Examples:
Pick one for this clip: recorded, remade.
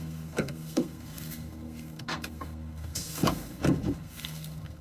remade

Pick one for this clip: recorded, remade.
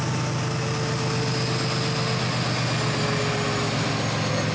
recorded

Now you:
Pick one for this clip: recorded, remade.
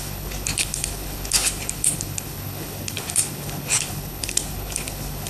remade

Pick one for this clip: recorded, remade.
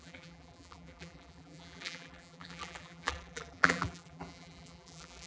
remade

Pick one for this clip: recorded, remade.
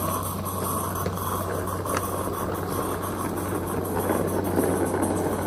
recorded